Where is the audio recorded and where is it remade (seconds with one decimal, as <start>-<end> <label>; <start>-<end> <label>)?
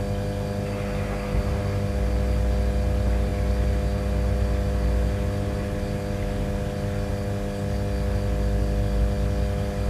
0.0-9.9 recorded